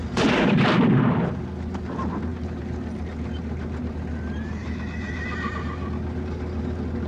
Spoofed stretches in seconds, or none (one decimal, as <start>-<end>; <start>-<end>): none